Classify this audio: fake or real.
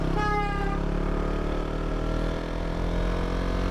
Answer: real